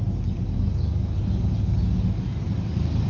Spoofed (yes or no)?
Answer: no